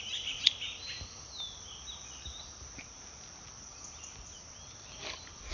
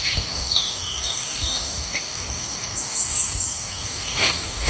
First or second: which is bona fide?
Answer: first